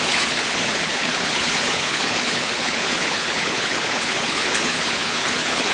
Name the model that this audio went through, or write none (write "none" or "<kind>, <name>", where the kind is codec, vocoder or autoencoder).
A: codec, HILCodec